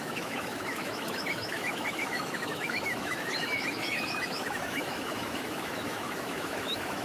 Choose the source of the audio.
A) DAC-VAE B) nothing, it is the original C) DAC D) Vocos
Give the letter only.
A